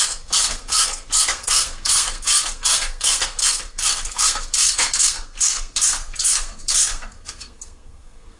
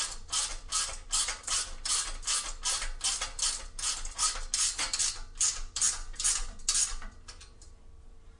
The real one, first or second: second